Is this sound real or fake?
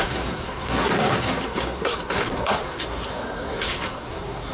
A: fake